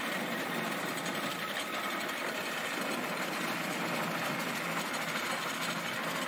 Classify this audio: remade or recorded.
recorded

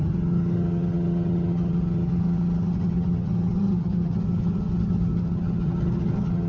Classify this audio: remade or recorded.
remade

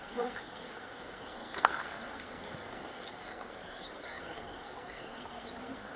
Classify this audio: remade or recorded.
remade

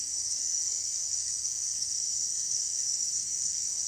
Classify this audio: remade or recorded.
remade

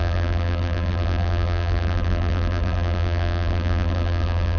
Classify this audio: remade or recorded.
remade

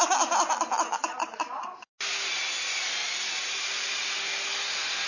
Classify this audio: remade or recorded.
recorded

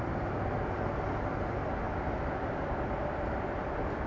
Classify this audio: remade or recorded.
recorded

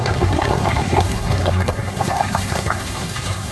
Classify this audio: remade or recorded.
remade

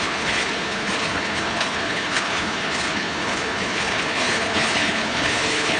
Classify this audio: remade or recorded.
remade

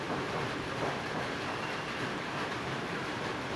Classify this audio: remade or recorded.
remade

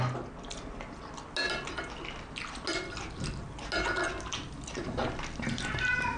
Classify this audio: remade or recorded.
recorded